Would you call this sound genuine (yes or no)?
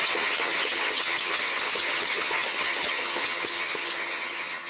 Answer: no